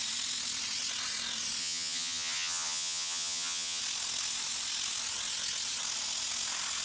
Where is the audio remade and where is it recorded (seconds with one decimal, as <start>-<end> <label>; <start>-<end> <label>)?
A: 0.0-1.6 recorded; 1.6-3.8 remade; 3.8-6.8 recorded